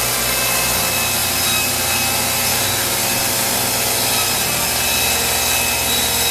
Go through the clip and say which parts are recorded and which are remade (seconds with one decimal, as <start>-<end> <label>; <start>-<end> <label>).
0.0-6.3 recorded